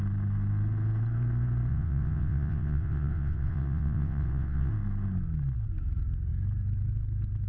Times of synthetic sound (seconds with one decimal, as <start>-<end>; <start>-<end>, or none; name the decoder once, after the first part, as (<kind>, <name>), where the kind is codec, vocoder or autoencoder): 1.7-4.7 (vocoder, WaveNeXt)